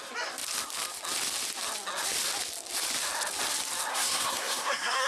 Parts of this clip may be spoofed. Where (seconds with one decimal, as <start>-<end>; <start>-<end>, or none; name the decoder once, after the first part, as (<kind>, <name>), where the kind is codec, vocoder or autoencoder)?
3.9-5.1 (codec, SNAC)